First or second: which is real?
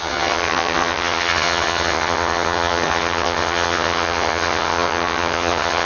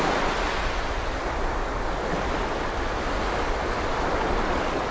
second